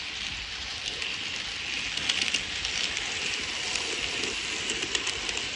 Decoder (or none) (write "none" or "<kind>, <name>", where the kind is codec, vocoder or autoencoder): none